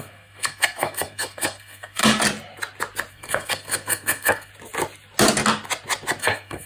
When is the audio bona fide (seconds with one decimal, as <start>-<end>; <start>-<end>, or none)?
2.0-3.1; 4.5-6.2